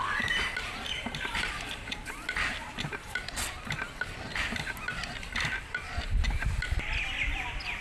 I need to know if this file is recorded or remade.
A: remade